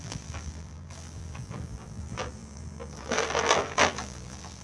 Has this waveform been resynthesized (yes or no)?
yes